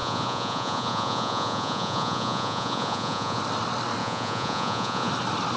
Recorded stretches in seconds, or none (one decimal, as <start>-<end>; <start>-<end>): 3.4-4.0; 5.1-5.6